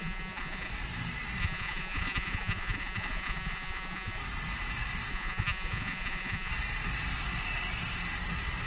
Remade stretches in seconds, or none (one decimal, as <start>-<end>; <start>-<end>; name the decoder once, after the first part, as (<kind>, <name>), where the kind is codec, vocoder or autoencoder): 0.0-0.7 (vocoder, Vocos); 1.4-4.2; 5.1-6.5